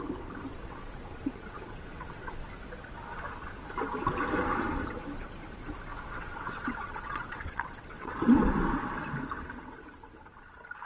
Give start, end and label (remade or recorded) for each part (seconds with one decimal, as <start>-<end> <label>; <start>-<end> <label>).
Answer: 0.0-0.5 recorded; 0.5-2.3 remade; 2.3-5.9 recorded; 5.9-8.1 remade; 8.1-10.9 recorded